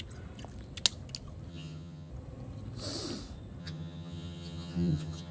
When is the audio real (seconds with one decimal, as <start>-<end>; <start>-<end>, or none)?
0.0-1.5; 2.1-3.6

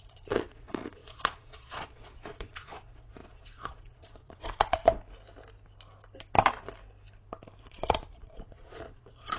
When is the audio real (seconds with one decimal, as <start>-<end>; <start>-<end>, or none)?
4.8-7.6

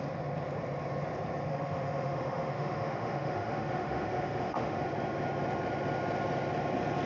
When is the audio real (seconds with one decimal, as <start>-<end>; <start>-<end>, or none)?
0.0-1.5; 4.8-7.1

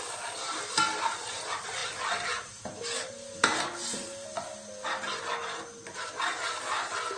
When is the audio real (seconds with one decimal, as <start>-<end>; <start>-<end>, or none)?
0.0-7.2